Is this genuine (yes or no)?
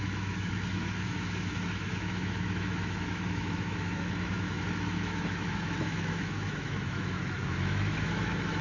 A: no